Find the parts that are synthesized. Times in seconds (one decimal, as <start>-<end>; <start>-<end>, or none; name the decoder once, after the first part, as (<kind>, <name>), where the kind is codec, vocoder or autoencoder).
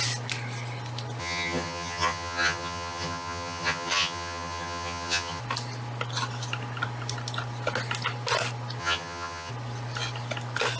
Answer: 1.2-5.4 (vocoder, HiFi-GAN); 8.8-9.5